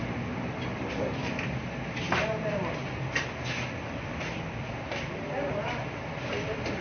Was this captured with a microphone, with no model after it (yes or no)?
yes